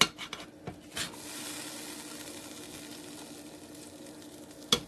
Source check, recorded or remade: recorded